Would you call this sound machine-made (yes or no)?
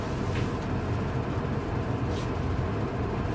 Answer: no